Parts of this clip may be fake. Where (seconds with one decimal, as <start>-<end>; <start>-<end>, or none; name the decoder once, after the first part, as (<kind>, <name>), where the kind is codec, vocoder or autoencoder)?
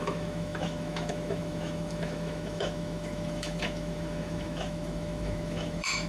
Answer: 0.0-6.1 (autoencoder, DAC-VAE)